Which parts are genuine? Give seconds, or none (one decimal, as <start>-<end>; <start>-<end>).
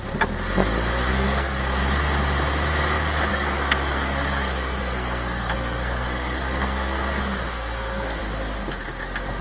0.0-1.1; 1.6-3.3; 8.2-9.4